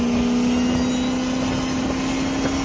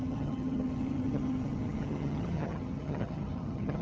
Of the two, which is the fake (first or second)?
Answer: second